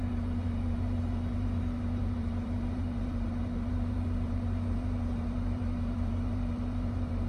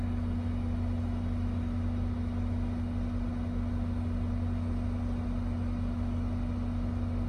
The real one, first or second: second